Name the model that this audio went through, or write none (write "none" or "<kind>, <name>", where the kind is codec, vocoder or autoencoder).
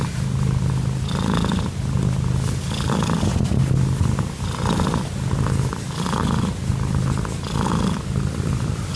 none